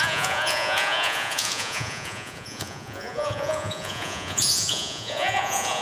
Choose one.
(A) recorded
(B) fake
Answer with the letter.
B